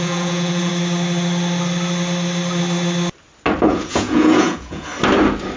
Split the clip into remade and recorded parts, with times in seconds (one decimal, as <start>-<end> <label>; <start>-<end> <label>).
0.0-0.7 remade; 0.7-3.7 recorded; 3.7-4.9 remade; 4.9-5.6 recorded